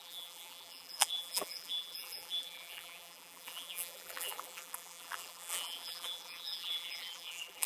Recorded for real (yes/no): no